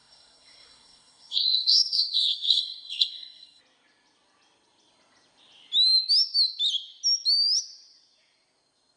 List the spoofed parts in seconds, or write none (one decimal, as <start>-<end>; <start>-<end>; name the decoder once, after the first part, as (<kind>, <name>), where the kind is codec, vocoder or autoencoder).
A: 0.0-3.6 (codec, SNAC)